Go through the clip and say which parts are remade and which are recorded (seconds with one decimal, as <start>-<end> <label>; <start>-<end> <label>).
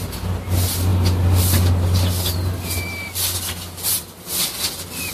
0.0-0.9 recorded; 0.9-4.0 remade; 4.0-5.1 recorded